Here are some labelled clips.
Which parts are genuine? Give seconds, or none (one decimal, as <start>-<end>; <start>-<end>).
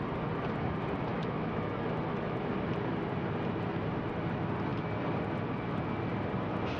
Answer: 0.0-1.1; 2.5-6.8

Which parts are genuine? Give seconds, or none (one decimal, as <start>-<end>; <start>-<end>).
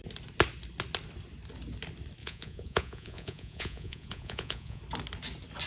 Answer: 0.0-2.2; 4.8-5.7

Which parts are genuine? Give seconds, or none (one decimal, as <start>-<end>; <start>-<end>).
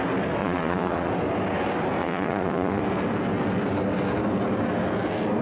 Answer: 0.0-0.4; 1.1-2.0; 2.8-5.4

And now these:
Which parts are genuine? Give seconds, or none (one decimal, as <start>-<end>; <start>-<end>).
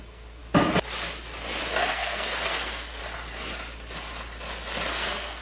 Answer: 0.4-1.9; 3.0-4.9